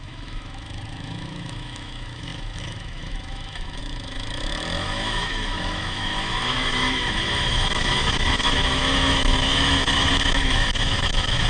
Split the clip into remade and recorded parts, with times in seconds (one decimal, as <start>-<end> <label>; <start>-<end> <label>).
0.0-11.5 remade